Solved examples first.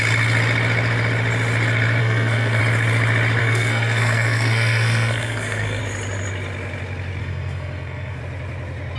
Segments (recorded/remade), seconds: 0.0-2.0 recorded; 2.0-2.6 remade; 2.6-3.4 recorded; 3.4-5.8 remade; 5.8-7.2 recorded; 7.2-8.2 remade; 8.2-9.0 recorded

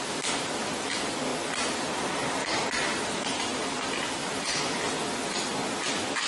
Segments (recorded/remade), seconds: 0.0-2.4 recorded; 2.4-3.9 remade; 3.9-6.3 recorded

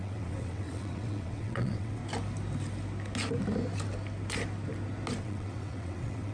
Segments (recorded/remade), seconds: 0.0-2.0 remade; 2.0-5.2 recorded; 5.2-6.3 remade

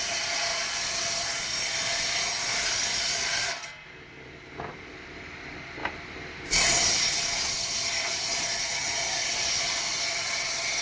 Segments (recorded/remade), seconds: 0.0-10.8 recorded

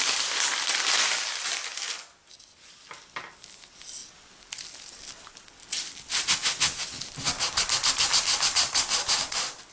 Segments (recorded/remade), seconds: 0.0-9.7 recorded